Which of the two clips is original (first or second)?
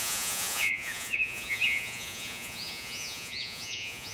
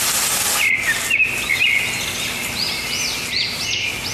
second